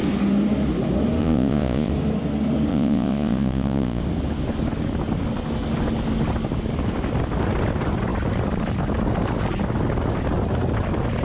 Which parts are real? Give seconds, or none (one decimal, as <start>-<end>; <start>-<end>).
0.0-1.2; 1.9-2.7; 4.0-11.2